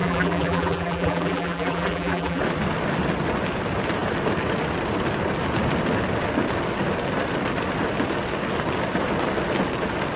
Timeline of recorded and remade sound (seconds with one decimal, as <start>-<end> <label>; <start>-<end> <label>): 0.0-2.4 remade; 2.4-10.2 recorded